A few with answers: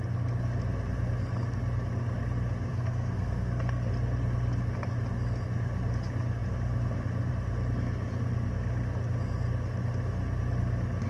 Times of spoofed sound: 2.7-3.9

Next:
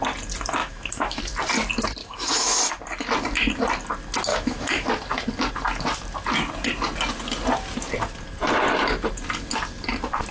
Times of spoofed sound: 0.6-1.2; 2.0-2.6; 4.3-4.9

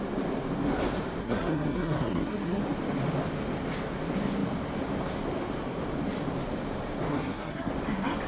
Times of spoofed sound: 1.2-2.6; 7.1-7.7

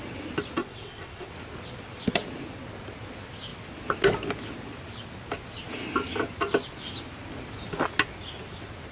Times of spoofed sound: 0.6-1.3

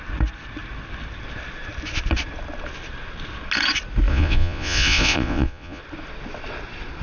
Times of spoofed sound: 4.1-5.8

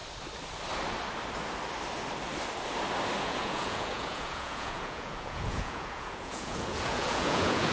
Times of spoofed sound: 3.2-7.7

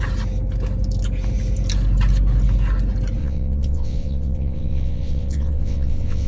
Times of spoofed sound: 3.2-6.3